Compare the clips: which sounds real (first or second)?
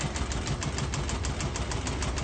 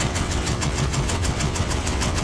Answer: first